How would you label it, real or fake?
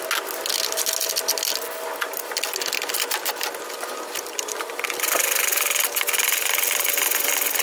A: real